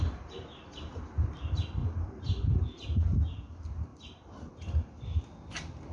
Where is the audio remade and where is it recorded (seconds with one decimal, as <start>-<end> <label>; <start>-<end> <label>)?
0.0-1.8 recorded; 1.8-2.6 remade; 2.6-3.9 recorded; 3.9-5.2 remade; 5.2-5.9 recorded